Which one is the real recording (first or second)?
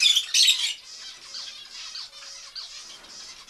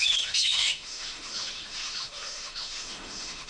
first